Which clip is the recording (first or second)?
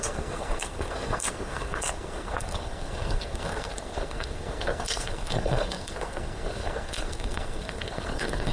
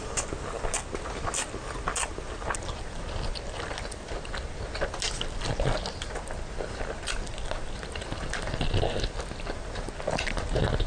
second